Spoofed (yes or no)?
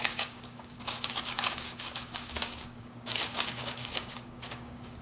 yes